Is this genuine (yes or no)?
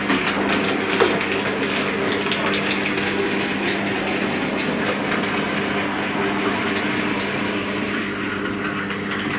yes